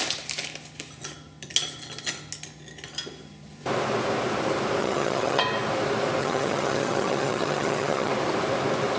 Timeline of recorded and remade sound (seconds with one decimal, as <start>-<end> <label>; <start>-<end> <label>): 0.0-4.8 recorded; 4.8-5.4 remade; 5.4-6.2 recorded; 6.2-8.1 remade; 8.1-9.0 recorded